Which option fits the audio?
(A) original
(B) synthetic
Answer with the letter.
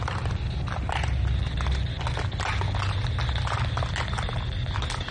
A